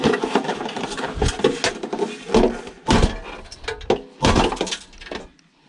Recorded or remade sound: recorded